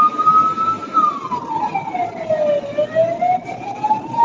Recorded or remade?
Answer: recorded